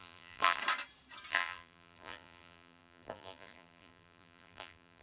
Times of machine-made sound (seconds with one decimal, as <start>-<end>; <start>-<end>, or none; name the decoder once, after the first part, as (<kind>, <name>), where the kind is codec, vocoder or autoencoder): 0.0-0.6 (vocoder, BigVGAN v2); 1.3-5.0